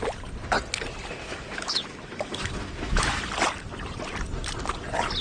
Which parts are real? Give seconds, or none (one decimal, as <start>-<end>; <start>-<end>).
0.0-1.2; 3.2-5.2